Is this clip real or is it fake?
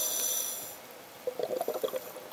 real